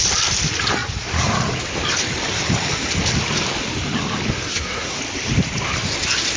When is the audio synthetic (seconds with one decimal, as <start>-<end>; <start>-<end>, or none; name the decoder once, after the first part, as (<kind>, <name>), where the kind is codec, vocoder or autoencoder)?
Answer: 4.5-5.0 (codec, SNAC)